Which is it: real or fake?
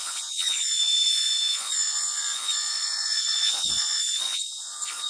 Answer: fake